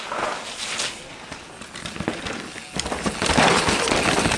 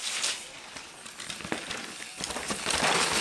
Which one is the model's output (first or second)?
second